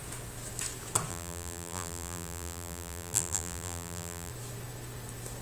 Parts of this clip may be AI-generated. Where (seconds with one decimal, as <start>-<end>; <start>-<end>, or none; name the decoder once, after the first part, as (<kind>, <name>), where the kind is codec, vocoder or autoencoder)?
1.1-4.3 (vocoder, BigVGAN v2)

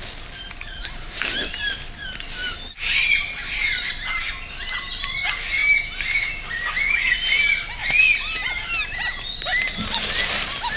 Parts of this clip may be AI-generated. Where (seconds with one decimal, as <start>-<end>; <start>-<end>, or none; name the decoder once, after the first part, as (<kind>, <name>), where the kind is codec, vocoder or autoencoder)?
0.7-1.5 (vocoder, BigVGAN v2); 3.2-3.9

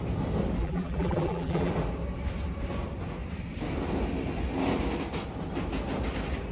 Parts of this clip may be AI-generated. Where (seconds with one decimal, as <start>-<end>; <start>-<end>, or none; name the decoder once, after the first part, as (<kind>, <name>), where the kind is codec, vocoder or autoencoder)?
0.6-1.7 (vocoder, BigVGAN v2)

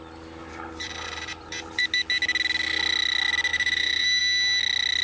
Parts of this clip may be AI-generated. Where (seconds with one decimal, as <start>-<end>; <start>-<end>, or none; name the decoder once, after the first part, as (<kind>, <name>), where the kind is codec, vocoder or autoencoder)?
0.4-1.8 (vocoder, BigVGAN v2); 3.5-4.2

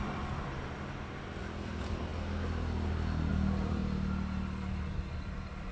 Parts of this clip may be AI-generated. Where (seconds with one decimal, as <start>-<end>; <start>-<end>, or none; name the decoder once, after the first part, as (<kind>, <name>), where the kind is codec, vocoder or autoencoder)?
0.0-2.1 (vocoder, BigVGAN v2); 3.3-3.8; 5.1-5.7

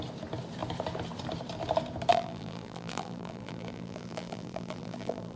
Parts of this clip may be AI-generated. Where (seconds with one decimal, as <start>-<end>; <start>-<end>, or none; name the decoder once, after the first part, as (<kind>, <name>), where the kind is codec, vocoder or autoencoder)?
2.1-5.4 (vocoder, BigVGAN v2)